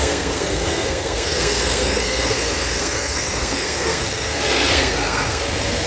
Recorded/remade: remade